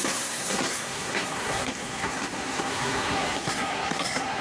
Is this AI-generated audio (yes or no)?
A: yes